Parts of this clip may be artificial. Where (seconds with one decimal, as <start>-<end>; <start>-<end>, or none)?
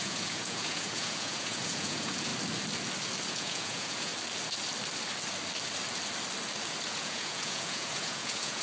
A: 0.0-2.3; 3.3-4.1; 6.9-8.6